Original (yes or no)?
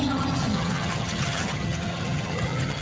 no